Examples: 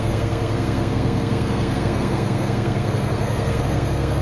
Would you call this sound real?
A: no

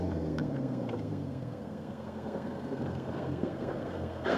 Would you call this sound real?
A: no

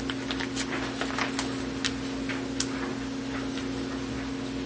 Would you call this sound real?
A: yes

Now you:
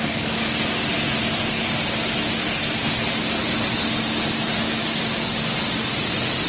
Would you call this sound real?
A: yes